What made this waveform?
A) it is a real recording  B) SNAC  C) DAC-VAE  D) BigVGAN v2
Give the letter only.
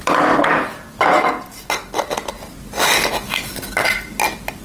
A